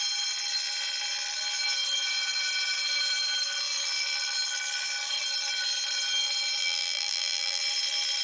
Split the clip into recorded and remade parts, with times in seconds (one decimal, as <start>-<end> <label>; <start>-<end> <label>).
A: 0.0-6.6 recorded; 6.6-7.6 remade; 7.6-8.2 recorded